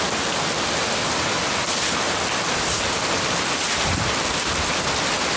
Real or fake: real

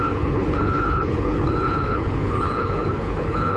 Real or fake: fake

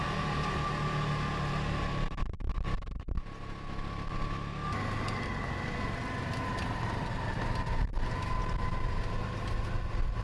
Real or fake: real